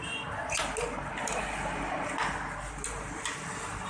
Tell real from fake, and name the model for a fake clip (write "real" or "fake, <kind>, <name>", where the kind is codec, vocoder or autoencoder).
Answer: real